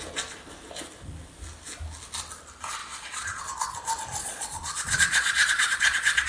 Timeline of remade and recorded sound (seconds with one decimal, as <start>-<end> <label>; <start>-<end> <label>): 0.0-2.8 recorded; 2.8-3.4 remade; 3.4-4.2 recorded; 4.2-6.3 remade